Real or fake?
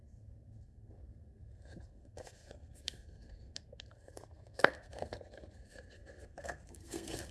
fake